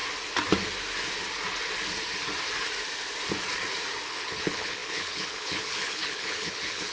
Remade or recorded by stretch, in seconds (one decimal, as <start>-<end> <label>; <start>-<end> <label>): 0.0-4.1 recorded; 4.1-6.9 remade